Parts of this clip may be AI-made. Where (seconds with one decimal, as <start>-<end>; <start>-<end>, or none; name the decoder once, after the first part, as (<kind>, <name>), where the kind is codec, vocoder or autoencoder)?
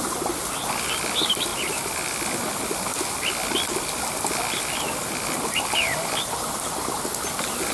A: none